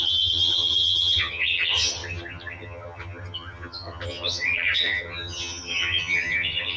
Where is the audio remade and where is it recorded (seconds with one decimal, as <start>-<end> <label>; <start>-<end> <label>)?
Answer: 0.0-6.8 remade